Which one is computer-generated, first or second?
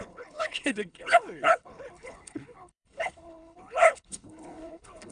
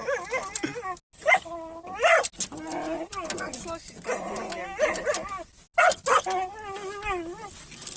first